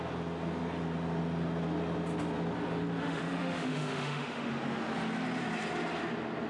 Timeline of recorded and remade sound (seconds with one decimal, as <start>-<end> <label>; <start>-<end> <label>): 0.0-3.0 recorded; 3.0-4.5 remade; 4.5-6.5 recorded